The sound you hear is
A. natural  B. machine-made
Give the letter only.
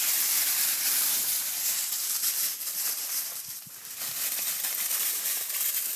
A